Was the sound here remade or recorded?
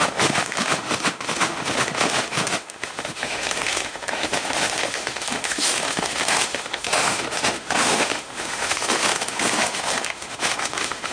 remade